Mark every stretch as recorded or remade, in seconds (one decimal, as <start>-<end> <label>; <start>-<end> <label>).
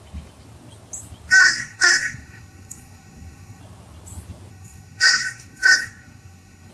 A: 0.0-1.4 recorded; 1.4-3.6 remade; 3.6-4.5 recorded; 4.5-6.7 remade